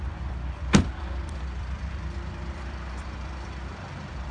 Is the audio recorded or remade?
remade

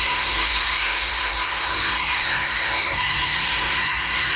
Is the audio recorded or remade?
remade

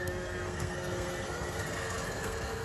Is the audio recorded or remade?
remade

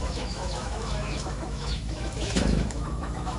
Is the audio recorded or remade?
remade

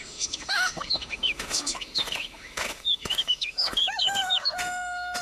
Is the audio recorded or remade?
remade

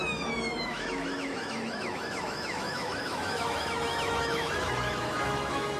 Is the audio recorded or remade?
remade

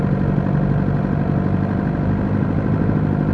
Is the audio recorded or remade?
recorded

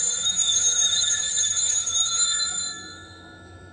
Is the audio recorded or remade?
remade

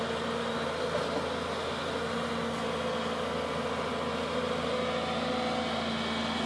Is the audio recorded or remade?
recorded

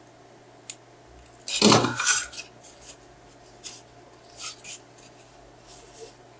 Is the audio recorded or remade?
recorded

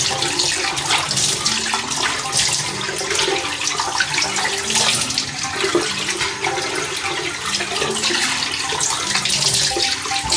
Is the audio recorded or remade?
recorded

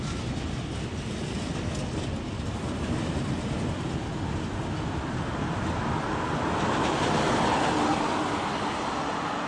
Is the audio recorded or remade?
recorded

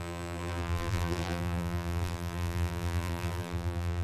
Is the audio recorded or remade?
remade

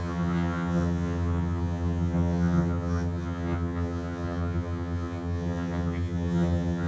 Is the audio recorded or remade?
remade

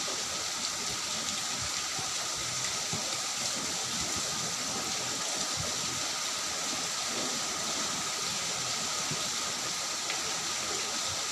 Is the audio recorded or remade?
recorded